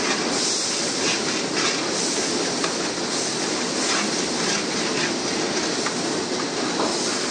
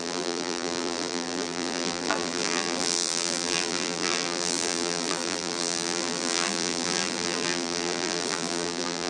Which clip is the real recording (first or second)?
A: first